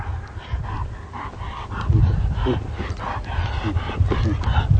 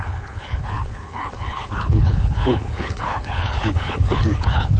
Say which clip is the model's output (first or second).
second